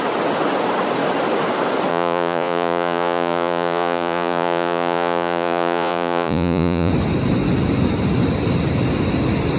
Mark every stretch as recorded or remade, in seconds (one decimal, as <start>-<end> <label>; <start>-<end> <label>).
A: 0.0-1.9 recorded; 1.9-6.9 remade; 6.9-9.6 recorded